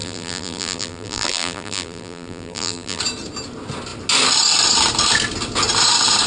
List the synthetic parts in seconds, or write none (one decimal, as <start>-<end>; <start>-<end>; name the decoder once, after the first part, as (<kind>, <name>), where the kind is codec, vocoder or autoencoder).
0.0-3.0 (vocoder, BigVGAN v2)